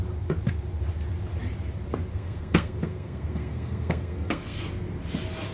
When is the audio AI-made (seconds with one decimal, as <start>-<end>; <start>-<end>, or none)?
2.1-4.6